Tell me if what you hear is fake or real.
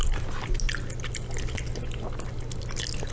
real